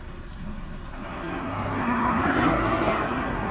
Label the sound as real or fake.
fake